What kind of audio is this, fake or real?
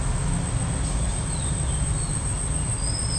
real